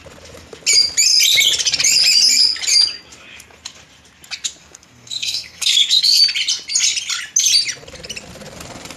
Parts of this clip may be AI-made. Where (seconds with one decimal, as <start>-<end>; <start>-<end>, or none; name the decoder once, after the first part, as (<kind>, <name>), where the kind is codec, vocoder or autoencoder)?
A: 4.6-6.2 (codec, SNAC)